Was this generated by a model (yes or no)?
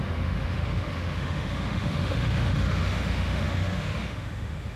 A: yes